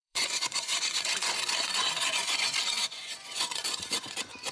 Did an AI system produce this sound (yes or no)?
yes